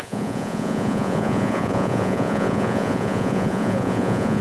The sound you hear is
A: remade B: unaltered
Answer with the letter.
A